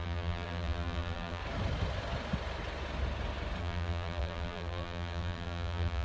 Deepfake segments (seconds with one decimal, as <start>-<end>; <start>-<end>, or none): 0.0-1.4; 3.6-6.0